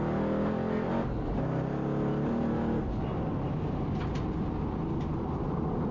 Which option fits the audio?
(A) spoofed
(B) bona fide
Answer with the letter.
B